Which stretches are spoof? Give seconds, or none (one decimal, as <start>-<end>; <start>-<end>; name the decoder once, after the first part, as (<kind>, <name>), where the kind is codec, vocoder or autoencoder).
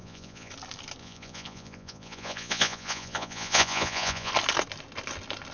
0.0-0.5 (vocoder, Vocos); 1.0-4.3